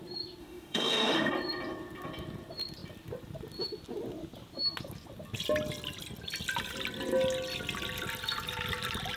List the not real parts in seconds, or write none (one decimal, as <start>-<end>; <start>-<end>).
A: 0.4-1.3